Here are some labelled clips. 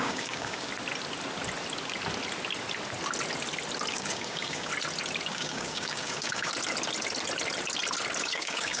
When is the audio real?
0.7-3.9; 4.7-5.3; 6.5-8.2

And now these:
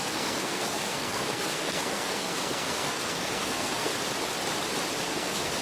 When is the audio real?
3.9-5.0

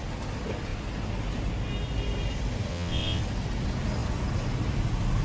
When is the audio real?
0.0-2.7; 3.2-5.2

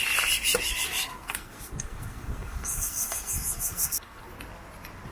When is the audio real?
0.0-1.1; 4.2-5.1

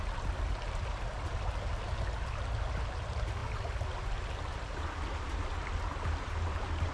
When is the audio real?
0.0-6.9